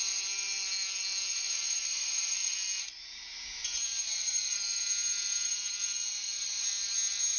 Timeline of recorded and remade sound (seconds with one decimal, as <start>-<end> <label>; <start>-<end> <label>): 0.0-1.3 recorded; 1.3-2.3 remade; 2.3-7.4 recorded